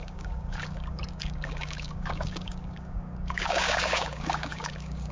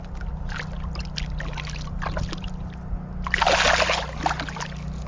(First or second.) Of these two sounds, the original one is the second